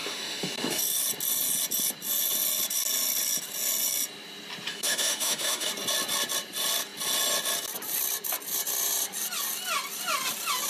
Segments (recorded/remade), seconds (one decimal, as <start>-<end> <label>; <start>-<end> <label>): 0.0-0.8 remade; 0.8-4.7 recorded; 4.7-5.7 remade; 5.7-10.7 recorded